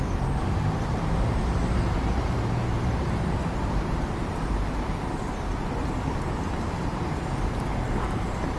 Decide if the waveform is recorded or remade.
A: remade